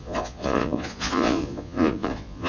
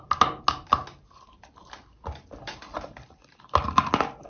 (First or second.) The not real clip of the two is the first